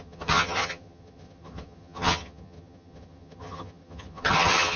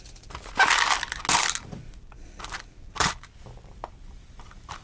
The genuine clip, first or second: second